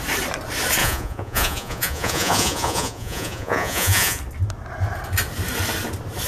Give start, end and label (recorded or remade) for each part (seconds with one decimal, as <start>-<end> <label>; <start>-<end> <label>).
0.0-0.8 recorded; 0.8-4.2 remade; 4.2-6.3 recorded